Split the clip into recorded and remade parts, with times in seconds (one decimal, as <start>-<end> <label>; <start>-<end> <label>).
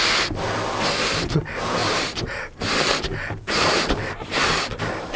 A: 0.0-1.8 recorded; 1.8-5.2 remade